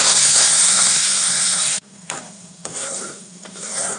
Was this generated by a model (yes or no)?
yes